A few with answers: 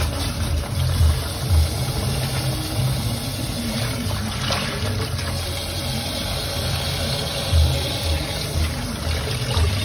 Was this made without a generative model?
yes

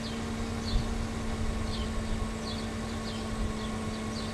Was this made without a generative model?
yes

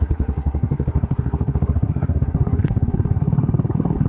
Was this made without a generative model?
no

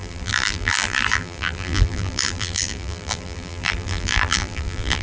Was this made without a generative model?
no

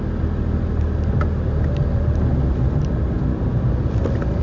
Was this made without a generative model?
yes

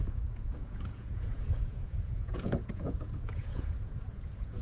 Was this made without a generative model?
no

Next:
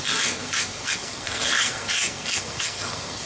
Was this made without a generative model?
no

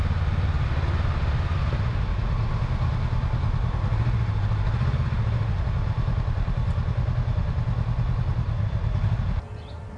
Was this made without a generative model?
yes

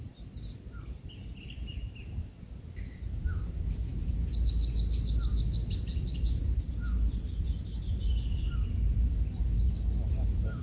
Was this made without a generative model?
yes